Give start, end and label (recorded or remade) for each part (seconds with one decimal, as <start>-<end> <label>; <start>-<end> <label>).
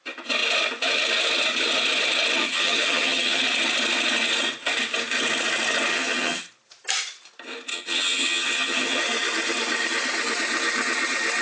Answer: 0.0-2.4 recorded; 2.4-3.4 remade; 3.4-5.9 recorded; 5.9-6.5 remade; 6.5-7.7 recorded; 7.7-9.0 remade; 9.0-11.4 recorded